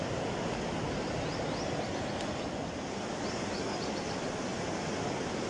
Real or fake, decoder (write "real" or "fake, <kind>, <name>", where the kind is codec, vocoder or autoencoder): real